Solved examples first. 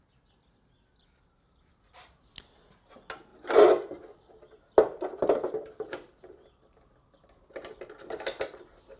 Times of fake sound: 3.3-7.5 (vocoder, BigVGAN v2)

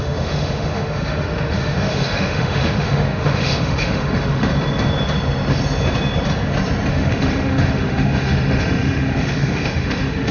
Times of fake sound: 0.0-4.5 (autoencoder, DAC-VAE); 6.9-10.3

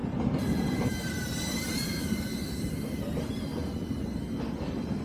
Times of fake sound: 0.0-3.0 (vocoder, BigVGAN v2)

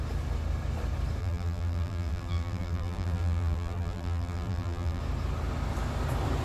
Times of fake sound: 1.2-5.0 (vocoder, BigVGAN v2)